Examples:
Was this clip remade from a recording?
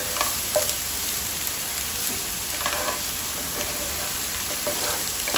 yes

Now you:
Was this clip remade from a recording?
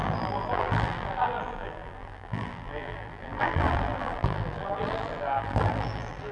yes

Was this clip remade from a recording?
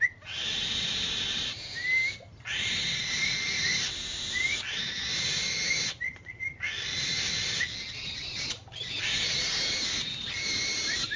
no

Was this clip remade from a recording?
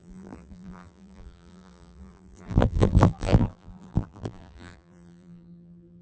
yes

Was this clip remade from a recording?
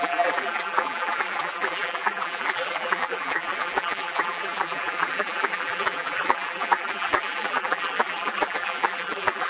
yes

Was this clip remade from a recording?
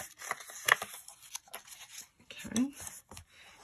no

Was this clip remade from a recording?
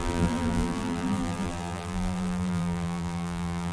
yes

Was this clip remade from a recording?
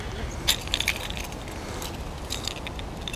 no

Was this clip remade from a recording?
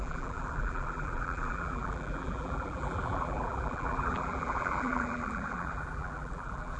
yes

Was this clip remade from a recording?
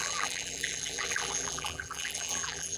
yes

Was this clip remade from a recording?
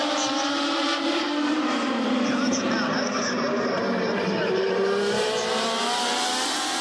yes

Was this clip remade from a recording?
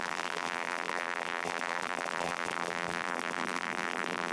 yes